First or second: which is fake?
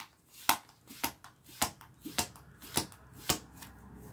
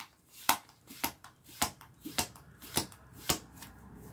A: second